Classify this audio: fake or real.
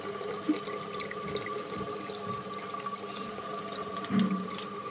real